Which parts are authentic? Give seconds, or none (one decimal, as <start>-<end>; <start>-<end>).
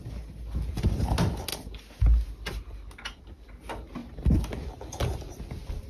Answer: 0.0-5.9